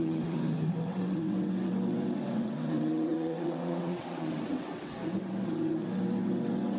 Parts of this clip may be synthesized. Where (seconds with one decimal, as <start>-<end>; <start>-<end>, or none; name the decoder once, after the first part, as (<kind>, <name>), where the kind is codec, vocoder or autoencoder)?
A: 0.0-6.8 (vocoder, WaveNeXt)